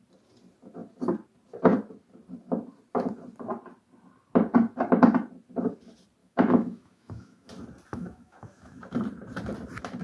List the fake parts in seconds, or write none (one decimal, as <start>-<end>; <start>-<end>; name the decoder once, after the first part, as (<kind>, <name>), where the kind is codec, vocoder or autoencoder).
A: 6.2-7.5 (autoencoder, DAC-VAE); 7.9-8.8